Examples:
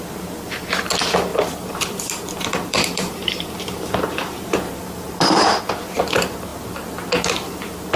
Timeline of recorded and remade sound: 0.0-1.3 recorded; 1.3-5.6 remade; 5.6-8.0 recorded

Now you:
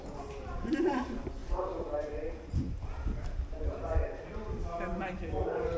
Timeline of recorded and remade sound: 0.0-5.8 remade

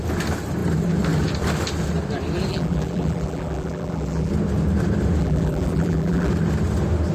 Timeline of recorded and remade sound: 0.0-2.5 recorded; 2.5-4.3 remade; 4.3-5.2 recorded; 5.2-6.3 remade; 6.3-7.1 recorded

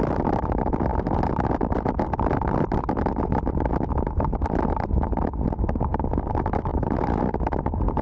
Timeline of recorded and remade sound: 0.0-6.7 recorded; 6.7-7.2 remade; 7.2-8.0 recorded

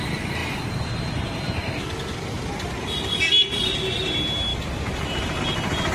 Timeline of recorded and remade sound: 0.0-5.9 recorded

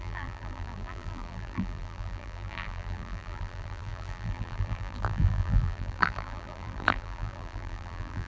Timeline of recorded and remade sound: 0.0-8.3 remade

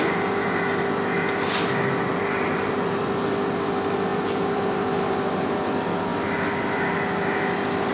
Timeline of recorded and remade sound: 0.0-2.1 recorded; 2.1-3.0 remade; 3.0-4.1 recorded; 4.1-5.6 remade; 5.6-7.9 recorded

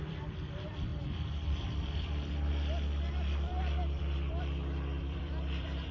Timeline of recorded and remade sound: 0.0-5.9 remade